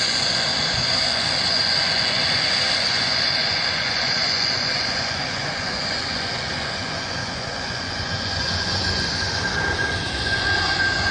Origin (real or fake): fake